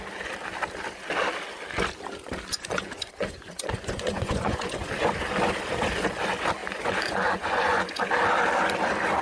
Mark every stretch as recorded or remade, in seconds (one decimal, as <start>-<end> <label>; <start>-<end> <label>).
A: 0.0-2.5 recorded; 2.5-4.9 remade; 4.9-6.6 recorded; 6.6-8.1 remade; 8.1-9.2 recorded